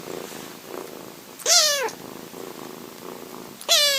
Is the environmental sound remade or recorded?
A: recorded